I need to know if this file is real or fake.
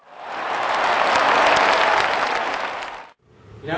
real